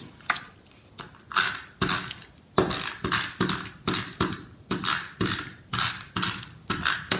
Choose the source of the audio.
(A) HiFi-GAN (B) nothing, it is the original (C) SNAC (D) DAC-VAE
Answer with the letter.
B